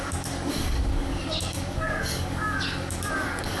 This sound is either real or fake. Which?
fake